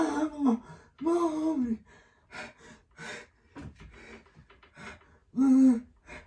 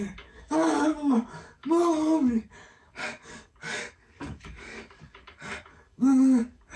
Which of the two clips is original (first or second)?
first